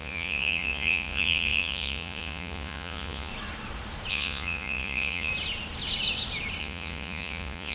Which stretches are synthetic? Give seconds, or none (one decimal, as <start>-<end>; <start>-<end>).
0.0-3.3; 4.1-5.3; 6.6-7.7